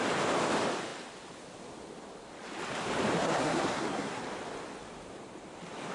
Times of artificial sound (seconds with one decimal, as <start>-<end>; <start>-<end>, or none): 3.2-4.2